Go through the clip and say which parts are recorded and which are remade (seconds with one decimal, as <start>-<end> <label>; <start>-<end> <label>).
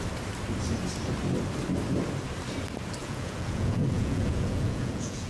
0.0-3.0 recorded; 3.0-5.3 remade